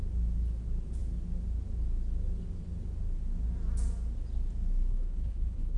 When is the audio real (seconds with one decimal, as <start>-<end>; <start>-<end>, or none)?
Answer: 0.0-4.9